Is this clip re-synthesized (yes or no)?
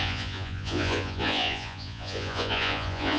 yes